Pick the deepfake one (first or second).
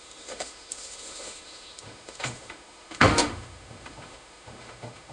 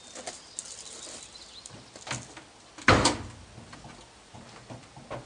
first